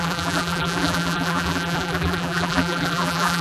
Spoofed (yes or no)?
yes